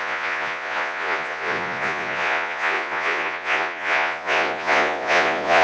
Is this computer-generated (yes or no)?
yes